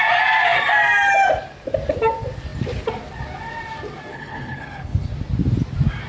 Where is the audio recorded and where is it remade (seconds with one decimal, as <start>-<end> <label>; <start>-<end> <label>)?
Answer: 0.0-4.1 recorded; 4.1-5.1 remade; 5.1-6.1 recorded